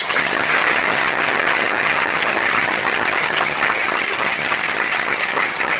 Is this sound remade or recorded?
remade